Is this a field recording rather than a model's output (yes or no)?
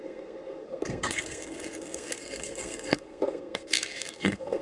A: no